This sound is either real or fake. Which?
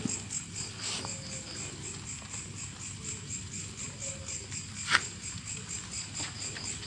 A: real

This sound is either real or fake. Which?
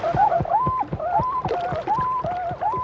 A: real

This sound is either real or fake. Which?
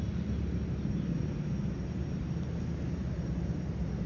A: real